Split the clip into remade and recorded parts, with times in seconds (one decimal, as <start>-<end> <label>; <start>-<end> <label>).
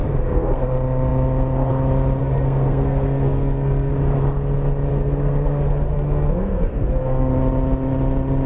0.0-0.6 remade; 0.6-2.2 recorded; 2.2-3.9 remade; 3.9-4.9 recorded; 4.9-7.3 remade; 7.3-8.5 recorded